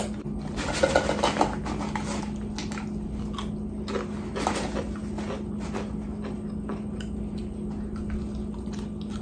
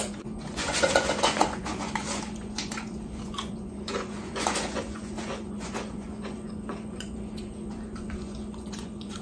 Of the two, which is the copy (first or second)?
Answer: second